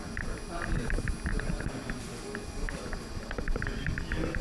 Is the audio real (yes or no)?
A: yes